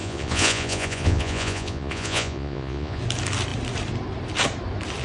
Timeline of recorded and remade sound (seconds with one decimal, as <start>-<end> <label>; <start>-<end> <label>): 0.0-3.0 remade; 3.0-5.0 recorded